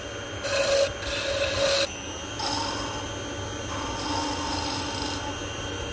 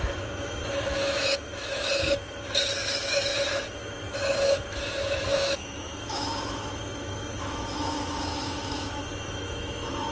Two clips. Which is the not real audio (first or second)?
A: second